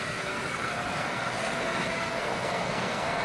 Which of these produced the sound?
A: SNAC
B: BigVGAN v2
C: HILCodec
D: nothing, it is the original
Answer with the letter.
A